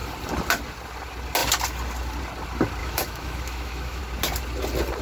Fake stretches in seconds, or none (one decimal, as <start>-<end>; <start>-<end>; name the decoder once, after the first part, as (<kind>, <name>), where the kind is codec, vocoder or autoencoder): 2.8-4.0 (autoencoder, DAC-VAE)